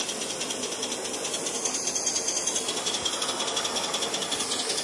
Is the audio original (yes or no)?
yes